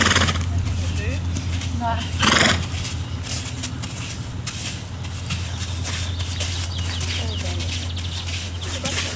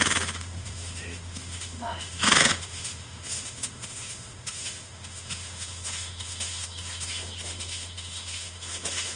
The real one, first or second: first